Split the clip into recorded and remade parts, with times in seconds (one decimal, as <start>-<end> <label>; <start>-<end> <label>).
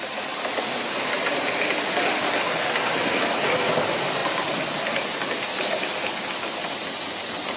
0.0-7.6 recorded